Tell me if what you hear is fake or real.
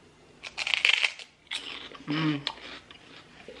real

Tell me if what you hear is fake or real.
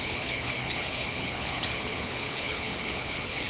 fake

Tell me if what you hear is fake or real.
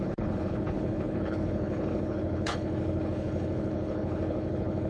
fake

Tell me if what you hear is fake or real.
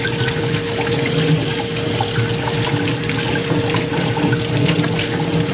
real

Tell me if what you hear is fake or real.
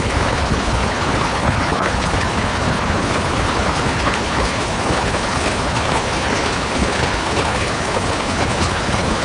fake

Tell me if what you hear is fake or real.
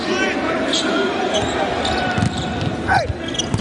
real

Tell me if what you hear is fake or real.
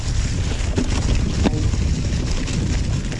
real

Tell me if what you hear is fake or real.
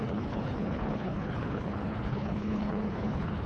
fake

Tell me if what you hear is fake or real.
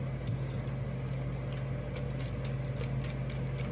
real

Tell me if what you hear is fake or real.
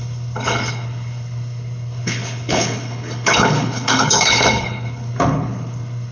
fake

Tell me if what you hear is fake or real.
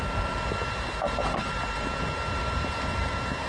real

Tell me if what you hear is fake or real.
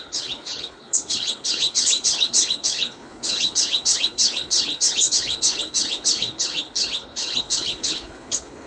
fake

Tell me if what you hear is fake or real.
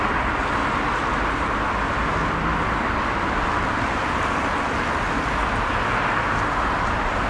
real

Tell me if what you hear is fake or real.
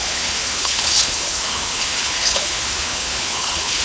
fake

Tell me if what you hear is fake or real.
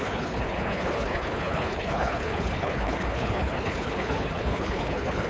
fake